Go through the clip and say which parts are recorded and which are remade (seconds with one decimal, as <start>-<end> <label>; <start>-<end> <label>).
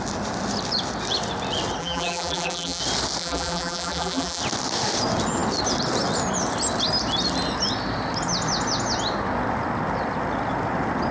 0.0-1.8 recorded; 1.8-2.8 remade; 2.8-3.2 recorded; 3.2-4.4 remade; 4.4-11.1 recorded